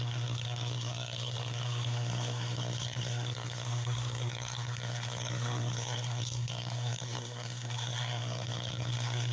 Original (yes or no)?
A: no